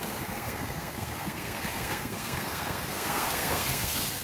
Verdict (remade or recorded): remade